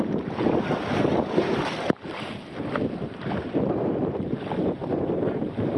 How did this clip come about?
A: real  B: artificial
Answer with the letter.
A